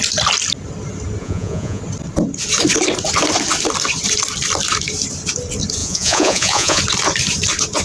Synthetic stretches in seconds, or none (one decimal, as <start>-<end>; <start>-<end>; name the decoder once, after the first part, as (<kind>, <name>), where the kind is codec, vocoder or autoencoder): 1.2-1.8 (vocoder, Vocos); 5.8-6.8